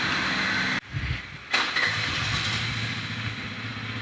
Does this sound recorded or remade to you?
recorded